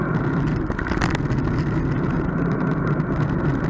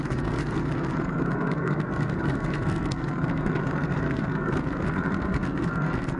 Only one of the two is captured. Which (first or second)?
first